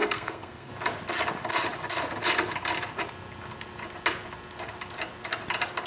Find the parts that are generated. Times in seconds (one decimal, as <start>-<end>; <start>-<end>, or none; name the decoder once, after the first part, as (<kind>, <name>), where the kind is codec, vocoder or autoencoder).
0.0-0.7 (codec, SNAC)